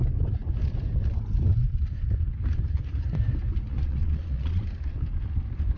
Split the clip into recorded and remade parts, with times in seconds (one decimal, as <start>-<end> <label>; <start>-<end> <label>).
0.0-3.7 recorded; 3.7-4.6 remade; 4.6-5.8 recorded